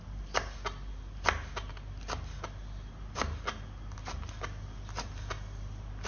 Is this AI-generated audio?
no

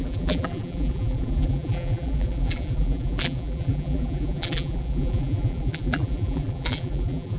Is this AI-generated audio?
yes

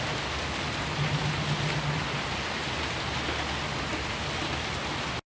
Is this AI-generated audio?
no